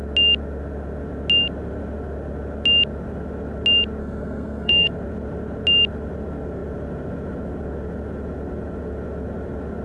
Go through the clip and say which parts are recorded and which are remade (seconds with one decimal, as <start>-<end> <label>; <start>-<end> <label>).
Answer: 0.0-4.0 recorded; 4.0-4.9 remade; 4.9-9.8 recorded